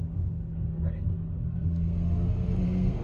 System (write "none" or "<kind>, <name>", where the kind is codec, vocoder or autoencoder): codec, SNAC